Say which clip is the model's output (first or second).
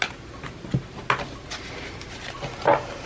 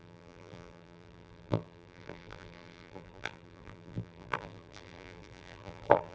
second